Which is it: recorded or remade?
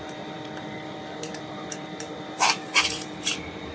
remade